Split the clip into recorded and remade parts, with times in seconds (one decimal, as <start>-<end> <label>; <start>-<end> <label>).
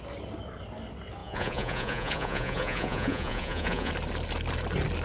0.0-1.2 recorded; 1.2-3.9 remade; 3.9-5.0 recorded